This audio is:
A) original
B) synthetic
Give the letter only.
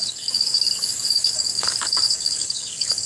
B